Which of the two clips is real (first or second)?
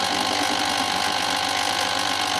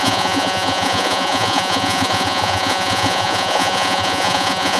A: first